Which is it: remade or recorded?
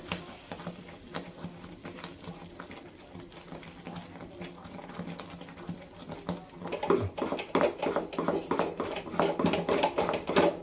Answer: recorded